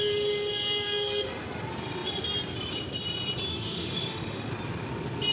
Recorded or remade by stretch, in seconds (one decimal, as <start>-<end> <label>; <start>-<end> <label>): 0.0-3.5 recorded; 3.5-4.5 remade; 4.5-5.3 recorded